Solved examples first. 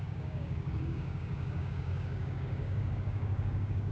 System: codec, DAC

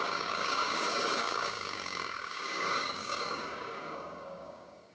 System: codec, DAC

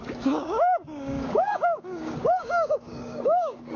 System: codec, DAC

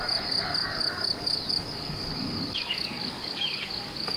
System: codec, DAC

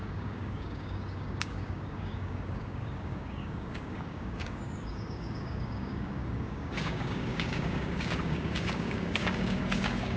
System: codec, DAC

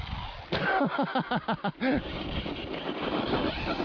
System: none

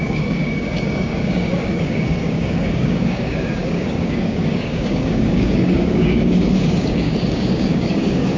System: codec, DAC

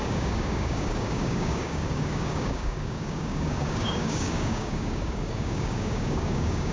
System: codec, DAC